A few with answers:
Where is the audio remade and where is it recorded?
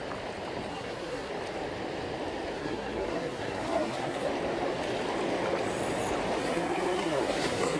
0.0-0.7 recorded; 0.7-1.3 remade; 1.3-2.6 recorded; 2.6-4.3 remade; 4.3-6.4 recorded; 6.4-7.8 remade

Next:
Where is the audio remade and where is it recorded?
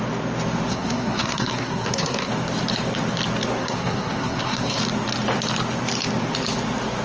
0.0-0.7 recorded; 0.7-2.3 remade; 2.3-3.6 recorded; 3.6-4.8 remade; 4.8-7.0 recorded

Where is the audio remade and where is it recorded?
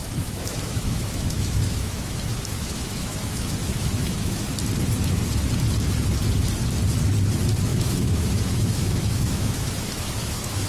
0.0-4.5 remade; 4.5-7.7 recorded; 7.7-10.7 remade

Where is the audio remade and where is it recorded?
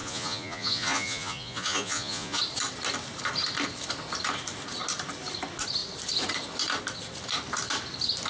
0.0-2.4 remade; 2.4-8.3 recorded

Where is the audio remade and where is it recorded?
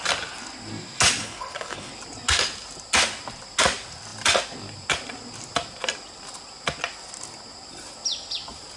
0.0-1.2 recorded; 1.2-1.9 remade; 1.9-8.8 recorded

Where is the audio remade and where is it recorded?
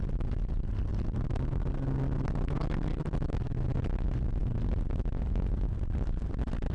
0.0-6.7 recorded